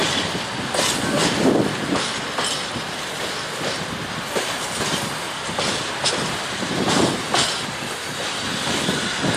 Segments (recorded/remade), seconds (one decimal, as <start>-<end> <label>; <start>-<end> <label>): 0.0-9.4 recorded